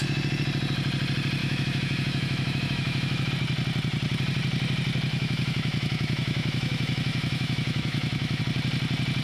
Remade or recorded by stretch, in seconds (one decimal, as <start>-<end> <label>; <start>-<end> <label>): 0.0-1.4 recorded; 1.4-3.3 remade; 3.3-5.1 recorded; 5.1-8.4 remade; 8.4-9.2 recorded